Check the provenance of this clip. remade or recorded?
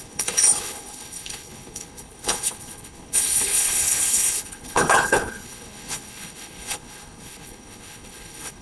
remade